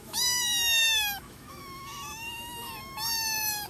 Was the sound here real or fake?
fake